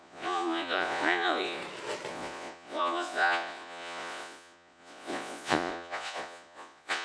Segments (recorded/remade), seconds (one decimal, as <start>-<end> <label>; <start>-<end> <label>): 0.0-1.6 remade; 1.6-2.1 recorded; 2.1-7.0 remade